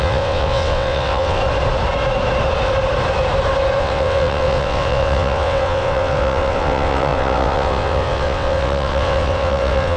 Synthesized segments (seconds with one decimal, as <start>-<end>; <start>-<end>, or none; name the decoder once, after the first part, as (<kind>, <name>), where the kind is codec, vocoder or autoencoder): 0.0-1.4 (vocoder, WaveNeXt); 3.8-10.0